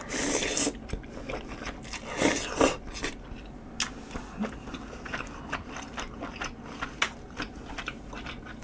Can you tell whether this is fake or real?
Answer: real